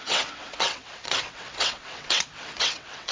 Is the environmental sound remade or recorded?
remade